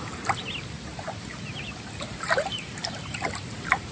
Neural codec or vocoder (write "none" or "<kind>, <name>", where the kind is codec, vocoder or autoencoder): none